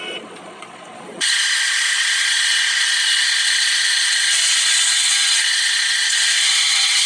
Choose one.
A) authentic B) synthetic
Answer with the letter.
B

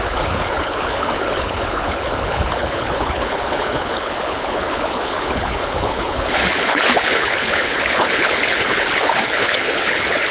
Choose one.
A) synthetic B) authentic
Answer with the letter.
A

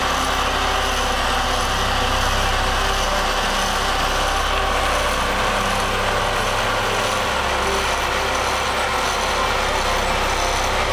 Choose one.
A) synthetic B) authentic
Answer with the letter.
B